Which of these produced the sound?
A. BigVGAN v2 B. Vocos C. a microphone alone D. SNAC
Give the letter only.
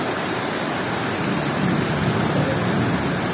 C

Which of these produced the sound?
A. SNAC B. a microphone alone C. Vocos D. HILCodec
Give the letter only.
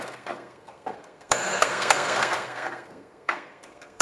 A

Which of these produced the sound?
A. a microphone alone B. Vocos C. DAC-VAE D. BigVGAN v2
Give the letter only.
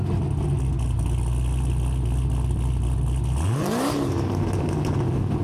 A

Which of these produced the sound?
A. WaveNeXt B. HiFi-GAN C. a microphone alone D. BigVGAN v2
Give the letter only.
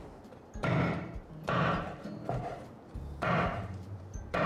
D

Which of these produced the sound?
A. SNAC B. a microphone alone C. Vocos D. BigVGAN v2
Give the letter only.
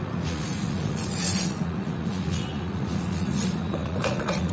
C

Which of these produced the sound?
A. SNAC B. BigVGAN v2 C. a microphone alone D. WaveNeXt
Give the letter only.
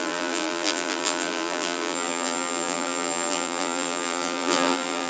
B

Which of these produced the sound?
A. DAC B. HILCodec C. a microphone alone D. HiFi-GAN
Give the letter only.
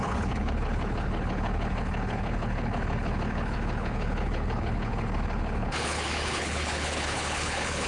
B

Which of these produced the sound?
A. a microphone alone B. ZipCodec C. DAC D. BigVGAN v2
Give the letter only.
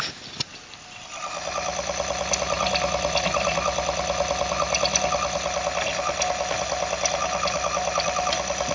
A